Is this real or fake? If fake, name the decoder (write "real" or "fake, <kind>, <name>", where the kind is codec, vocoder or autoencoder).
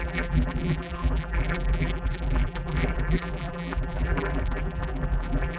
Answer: fake, vocoder, BigVGAN v2